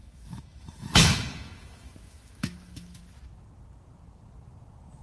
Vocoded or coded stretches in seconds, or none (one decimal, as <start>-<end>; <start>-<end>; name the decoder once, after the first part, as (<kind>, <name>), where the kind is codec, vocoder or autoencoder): 0.0-3.0 (autoencoder, DAC-VAE)